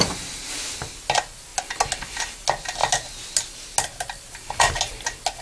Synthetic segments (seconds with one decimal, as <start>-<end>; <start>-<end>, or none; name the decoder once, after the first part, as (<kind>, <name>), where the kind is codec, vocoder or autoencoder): none